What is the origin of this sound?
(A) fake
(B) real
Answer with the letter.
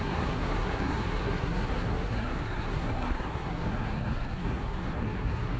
A